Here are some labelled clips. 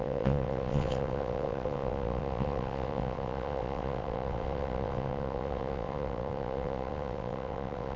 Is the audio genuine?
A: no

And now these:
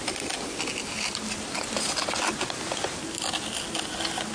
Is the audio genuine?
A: yes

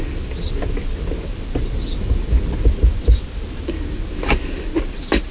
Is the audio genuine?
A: yes